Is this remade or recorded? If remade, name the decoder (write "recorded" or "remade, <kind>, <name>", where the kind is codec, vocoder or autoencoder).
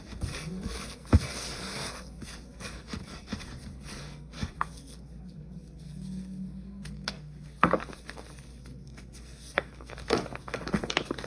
remade, codec, SNAC